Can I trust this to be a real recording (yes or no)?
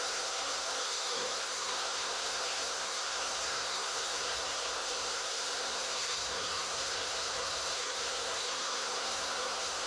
no